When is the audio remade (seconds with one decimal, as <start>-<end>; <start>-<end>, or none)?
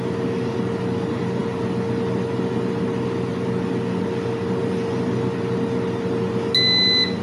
none